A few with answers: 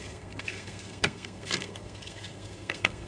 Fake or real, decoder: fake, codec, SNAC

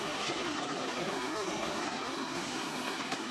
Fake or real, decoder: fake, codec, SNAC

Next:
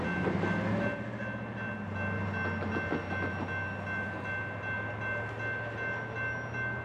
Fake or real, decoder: real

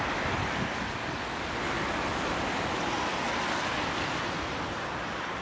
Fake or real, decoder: real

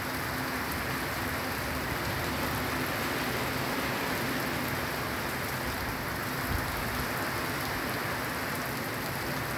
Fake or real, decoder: real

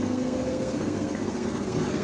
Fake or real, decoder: fake, codec, SNAC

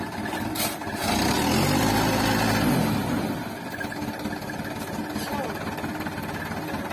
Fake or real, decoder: real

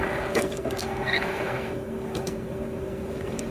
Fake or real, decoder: fake, codec, SNAC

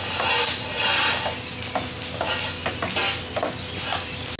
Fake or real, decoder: real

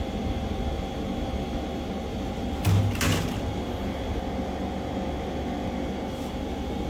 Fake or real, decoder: real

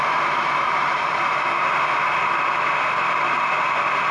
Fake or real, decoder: real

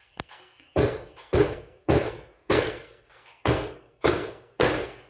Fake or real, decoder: fake, codec, SNAC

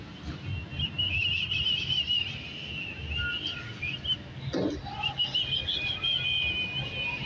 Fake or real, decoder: real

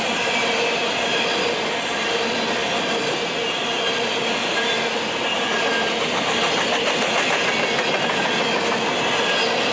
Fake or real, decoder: real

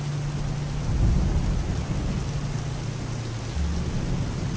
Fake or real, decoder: real